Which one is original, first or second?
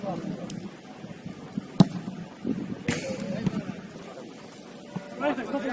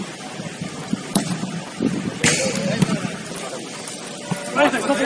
first